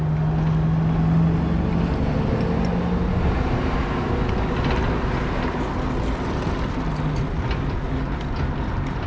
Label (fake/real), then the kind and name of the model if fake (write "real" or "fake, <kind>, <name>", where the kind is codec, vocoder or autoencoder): real